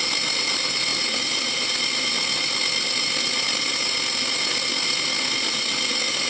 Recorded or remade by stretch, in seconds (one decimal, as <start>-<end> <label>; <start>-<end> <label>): 0.0-6.3 recorded